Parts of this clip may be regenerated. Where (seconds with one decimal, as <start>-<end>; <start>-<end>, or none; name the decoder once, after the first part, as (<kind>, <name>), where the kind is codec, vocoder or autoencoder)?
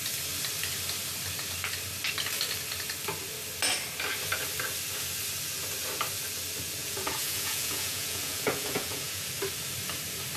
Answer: 6.8-9.3 (vocoder, Vocos)